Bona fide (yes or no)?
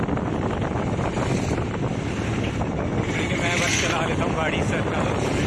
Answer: yes